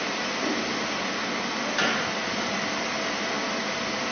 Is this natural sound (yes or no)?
yes